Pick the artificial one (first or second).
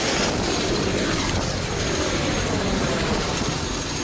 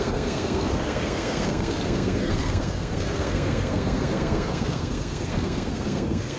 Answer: second